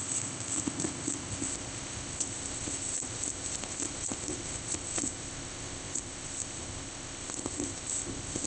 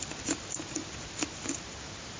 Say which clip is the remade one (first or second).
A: first